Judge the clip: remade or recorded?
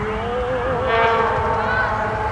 recorded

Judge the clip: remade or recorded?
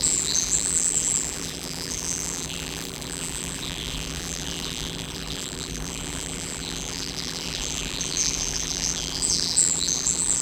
remade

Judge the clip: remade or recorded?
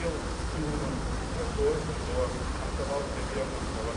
recorded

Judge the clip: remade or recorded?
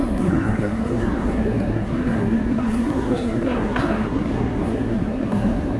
remade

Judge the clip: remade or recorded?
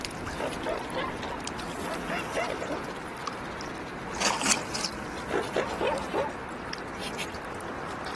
recorded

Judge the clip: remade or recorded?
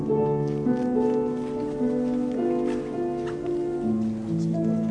recorded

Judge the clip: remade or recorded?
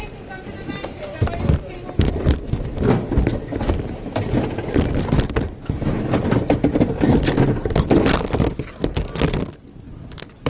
recorded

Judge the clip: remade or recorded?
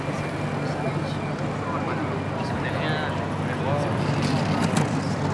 recorded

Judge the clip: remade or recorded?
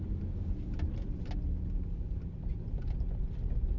recorded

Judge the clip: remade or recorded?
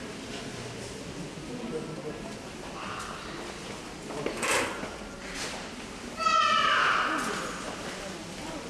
recorded